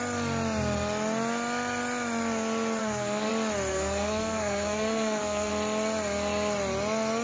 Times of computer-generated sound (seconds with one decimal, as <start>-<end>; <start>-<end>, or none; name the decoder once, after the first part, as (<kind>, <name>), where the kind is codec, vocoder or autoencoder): 2.8-3.3 (codec, SNAC); 3.7-5.5

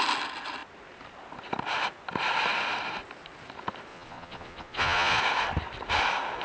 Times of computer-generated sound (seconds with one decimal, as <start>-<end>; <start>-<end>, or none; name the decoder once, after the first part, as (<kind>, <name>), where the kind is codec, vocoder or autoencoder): 3.9-5.2 (vocoder, Vocos)

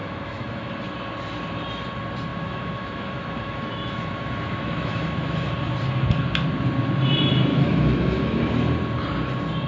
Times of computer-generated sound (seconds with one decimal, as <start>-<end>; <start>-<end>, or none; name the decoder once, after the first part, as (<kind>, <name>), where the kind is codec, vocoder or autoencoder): 0.0-0.7 (autoencoder, DAC-VAE); 2.3-5.5; 7.5-8.4

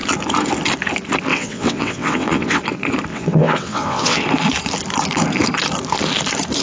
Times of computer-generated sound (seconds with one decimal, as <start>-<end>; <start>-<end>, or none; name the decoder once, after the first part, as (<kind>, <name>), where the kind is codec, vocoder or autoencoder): 1.3-2.6 (vocoder, WaveNeXt); 3.1-4.2

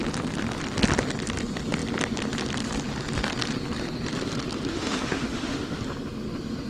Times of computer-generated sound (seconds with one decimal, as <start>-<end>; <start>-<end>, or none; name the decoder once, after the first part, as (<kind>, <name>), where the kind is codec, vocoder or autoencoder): 4.7-5.8 (autoencoder, DAC-VAE)

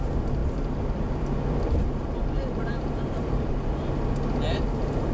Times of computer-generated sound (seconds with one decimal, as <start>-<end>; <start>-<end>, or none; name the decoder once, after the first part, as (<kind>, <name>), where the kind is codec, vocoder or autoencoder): 0.4-3.5 (vocoder, BigVGAN v2)

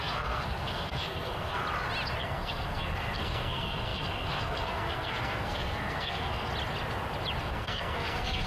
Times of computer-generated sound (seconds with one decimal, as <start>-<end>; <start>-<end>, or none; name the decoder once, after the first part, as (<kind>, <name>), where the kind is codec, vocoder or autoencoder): 0.0-1.6 (codec, SNAC); 2.2-6.5; 7.4-8.5

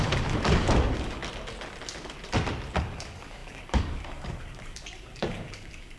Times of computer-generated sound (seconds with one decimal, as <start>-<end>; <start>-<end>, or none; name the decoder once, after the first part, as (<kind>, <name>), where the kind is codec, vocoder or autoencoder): 0.0-1.2 (codec, DAC); 2.8-6.0